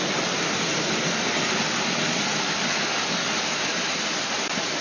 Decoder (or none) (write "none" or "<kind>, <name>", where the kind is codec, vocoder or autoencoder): none